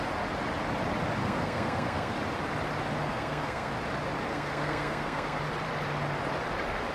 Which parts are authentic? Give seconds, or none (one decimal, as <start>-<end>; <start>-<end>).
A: 0.0-1.2; 2.1-3.1; 3.7-4.3; 5.4-6.9